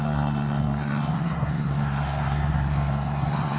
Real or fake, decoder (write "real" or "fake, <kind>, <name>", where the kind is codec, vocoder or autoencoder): fake, codec, SNAC